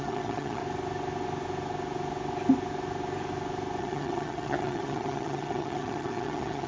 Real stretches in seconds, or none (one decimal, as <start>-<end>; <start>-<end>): 0.6-3.8